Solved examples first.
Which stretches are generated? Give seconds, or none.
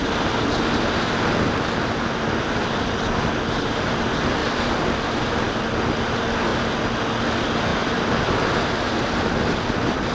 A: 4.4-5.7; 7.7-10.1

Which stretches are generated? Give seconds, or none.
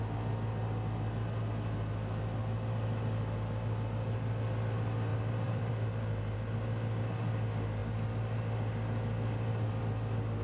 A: 5.1-5.7